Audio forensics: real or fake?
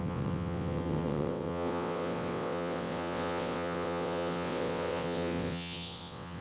fake